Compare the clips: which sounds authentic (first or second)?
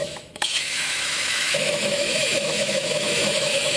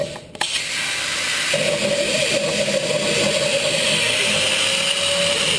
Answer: second